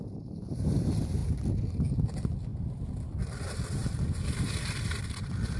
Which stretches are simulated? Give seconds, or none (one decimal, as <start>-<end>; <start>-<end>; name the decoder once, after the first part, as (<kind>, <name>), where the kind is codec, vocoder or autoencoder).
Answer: none